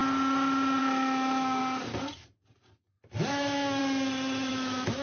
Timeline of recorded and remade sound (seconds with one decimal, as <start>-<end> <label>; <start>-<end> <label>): 0.0-0.8 recorded; 0.8-1.6 remade; 1.6-3.3 recorded; 3.3-3.8 remade; 3.8-4.5 recorded; 4.5-5.0 remade